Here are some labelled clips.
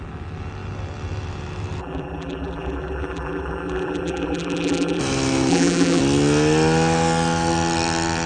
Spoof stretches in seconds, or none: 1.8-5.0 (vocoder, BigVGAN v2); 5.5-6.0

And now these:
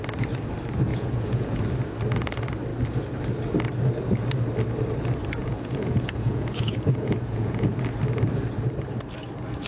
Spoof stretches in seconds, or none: 0.9-1.6 (vocoder, Vocos); 5.4-7.7

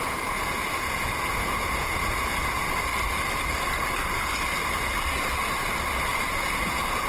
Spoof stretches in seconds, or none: 0.0-2.9 (vocoder, Vocos); 5.9-7.1